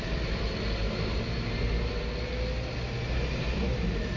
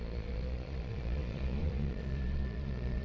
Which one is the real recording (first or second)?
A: first